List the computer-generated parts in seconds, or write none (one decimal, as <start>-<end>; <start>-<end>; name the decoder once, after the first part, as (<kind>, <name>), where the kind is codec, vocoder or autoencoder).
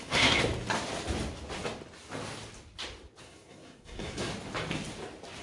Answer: 0.0-0.4 (codec, SNAC); 3.2-4.3